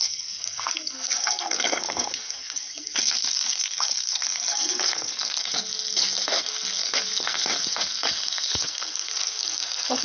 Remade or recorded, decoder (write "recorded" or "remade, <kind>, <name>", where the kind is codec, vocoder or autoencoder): remade, codec, SNAC